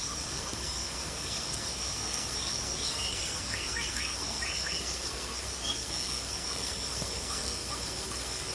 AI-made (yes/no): yes